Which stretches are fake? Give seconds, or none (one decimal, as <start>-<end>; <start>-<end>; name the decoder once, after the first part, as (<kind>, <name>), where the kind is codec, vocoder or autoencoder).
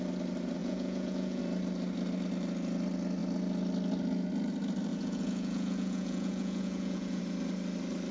0.6-1.4 (vocoder, Vocos); 4.9-7.2